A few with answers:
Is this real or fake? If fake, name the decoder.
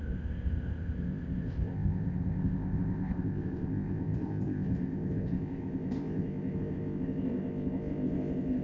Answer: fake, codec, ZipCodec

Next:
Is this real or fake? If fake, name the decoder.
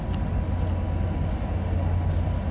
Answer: real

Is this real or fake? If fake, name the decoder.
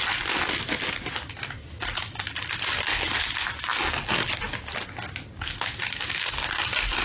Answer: real